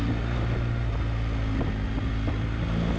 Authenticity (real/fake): real